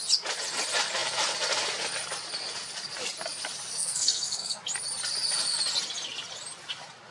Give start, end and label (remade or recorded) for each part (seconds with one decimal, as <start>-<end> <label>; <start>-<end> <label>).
0.0-3.7 recorded; 3.7-4.6 remade; 4.6-7.1 recorded